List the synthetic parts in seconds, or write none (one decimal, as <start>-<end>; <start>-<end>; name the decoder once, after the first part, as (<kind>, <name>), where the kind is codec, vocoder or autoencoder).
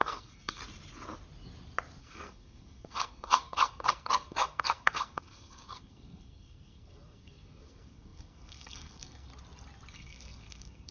0.0-0.6 (codec, SNAC); 2.0-9.3; 9.9-10.9